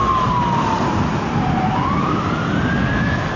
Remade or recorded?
recorded